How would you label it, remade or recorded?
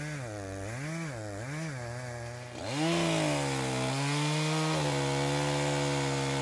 recorded